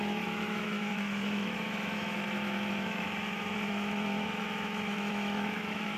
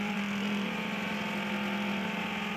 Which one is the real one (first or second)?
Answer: second